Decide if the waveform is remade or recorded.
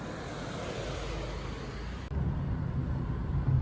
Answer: recorded